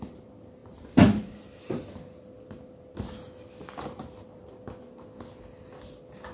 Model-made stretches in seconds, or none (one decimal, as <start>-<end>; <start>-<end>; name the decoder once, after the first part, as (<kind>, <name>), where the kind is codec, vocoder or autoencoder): none